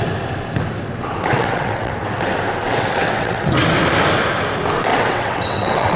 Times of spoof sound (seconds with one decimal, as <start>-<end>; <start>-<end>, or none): 1.3-1.9; 2.6-3.5; 4.9-6.0